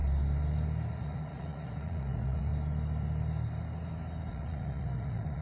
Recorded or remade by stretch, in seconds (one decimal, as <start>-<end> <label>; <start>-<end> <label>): 0.0-1.0 recorded; 1.0-2.5 remade; 2.5-4.3 recorded; 4.3-5.4 remade